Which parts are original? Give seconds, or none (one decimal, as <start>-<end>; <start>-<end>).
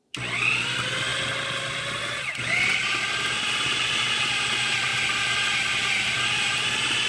0.0-7.1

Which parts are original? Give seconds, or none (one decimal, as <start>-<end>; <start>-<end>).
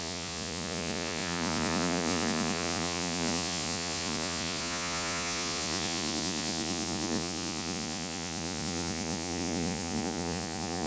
none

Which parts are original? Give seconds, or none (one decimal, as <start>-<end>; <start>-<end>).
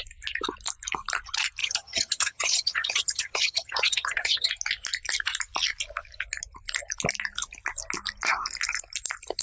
0.0-1.6; 4.5-9.4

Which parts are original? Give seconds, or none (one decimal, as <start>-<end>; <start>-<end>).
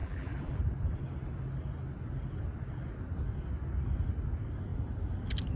0.6-5.6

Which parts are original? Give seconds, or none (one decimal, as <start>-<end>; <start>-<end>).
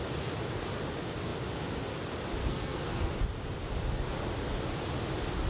0.0-2.4; 3.1-5.5